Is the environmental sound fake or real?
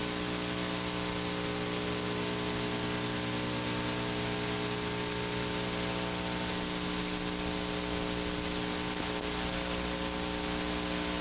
real